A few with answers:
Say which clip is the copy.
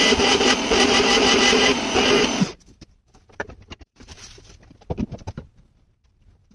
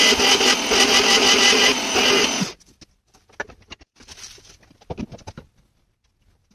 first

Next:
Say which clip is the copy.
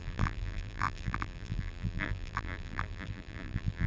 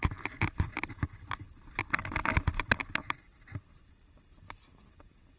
first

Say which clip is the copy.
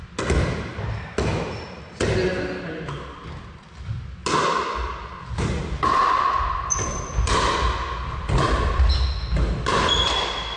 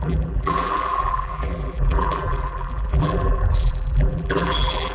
second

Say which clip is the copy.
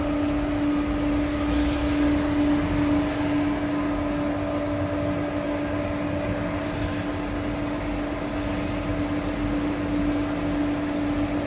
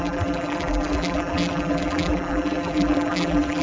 second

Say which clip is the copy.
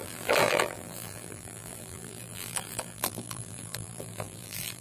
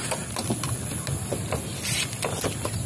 first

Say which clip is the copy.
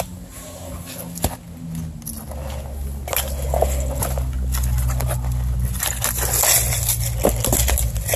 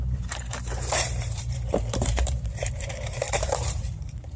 second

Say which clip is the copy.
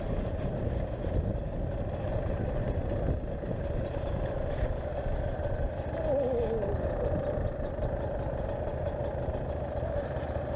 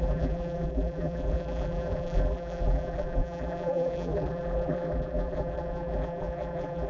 second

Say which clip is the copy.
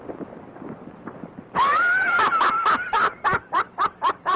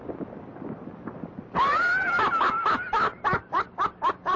first